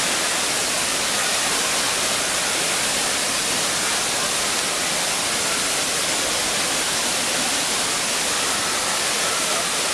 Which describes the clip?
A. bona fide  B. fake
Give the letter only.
A